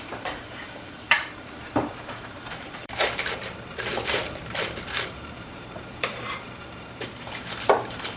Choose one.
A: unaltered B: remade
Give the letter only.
B